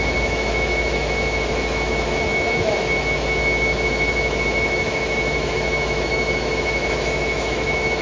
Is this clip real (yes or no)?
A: no